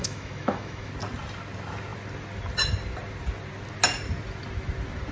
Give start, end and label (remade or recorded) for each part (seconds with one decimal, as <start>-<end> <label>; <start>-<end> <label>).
0.0-0.9 remade; 0.9-5.1 recorded